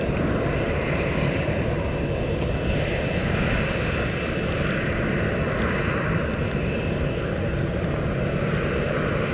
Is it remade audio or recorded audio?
recorded